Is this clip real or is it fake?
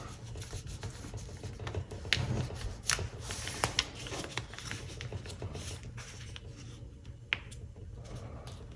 real